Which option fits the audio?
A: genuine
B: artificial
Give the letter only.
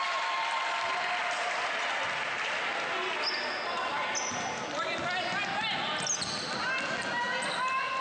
A